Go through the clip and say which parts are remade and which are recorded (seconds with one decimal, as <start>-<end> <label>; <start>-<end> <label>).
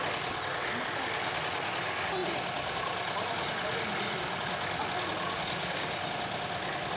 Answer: 0.0-7.0 recorded